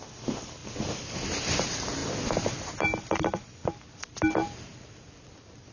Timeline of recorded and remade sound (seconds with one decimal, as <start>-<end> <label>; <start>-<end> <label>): 0.0-5.7 recorded